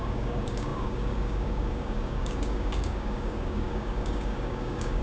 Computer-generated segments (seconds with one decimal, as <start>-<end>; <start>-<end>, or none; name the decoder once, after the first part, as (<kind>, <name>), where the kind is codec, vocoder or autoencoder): 0.0-5.0 (codec, DAC)